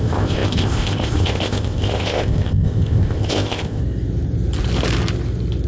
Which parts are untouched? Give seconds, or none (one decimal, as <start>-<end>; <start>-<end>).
3.8-5.7